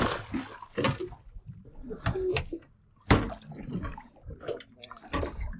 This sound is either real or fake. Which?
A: real